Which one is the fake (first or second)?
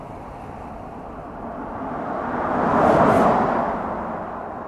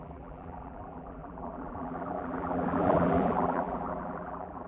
second